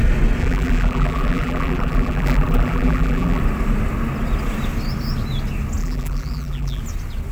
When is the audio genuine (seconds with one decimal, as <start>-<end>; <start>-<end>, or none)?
0.0-0.4; 3.4-5.8; 6.8-7.3